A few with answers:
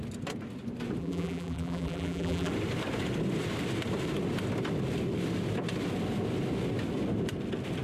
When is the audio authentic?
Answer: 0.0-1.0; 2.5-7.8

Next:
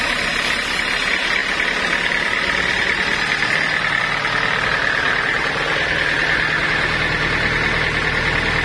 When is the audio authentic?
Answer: 0.0-8.6